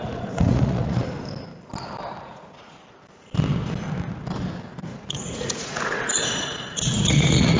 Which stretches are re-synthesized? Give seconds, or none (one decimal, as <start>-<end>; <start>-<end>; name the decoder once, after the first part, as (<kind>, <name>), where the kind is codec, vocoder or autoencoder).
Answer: 0.0-1.0 (vocoder, Vocos); 2.2-2.8; 4.8-7.6